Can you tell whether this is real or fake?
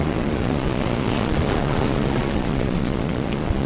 fake